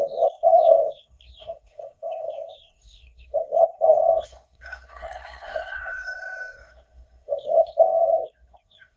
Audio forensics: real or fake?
fake